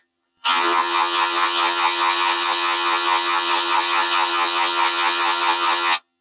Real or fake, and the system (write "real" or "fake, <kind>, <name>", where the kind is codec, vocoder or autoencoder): fake, vocoder, HiFi-GAN